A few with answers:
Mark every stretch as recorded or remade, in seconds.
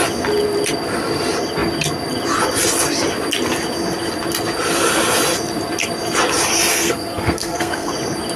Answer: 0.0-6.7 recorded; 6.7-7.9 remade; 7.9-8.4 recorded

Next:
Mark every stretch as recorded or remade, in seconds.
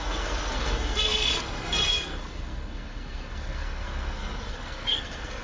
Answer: 0.0-5.4 remade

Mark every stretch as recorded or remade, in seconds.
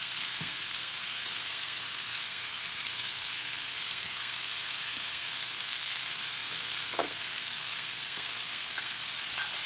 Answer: 0.0-9.0 remade; 9.0-9.7 recorded